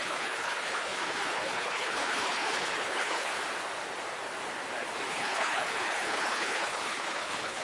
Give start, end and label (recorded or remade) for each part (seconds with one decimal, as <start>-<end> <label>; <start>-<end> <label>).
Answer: 0.0-3.3 remade; 3.3-5.1 recorded; 5.1-7.6 remade